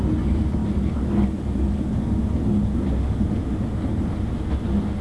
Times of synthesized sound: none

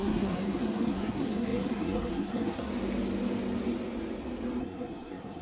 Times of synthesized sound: 0.0-2.7 (codec, SNAC); 4.6-5.4

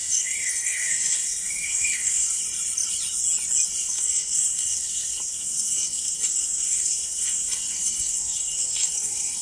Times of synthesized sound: 0.0-2.4 (codec, SNAC); 3.8-9.4

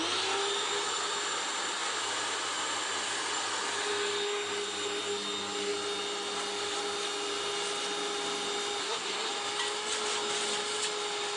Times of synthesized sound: 8.8-9.3 (codec, SNAC)

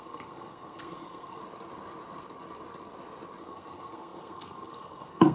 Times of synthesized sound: 0.0-1.4 (codec, SNAC); 3.4-5.3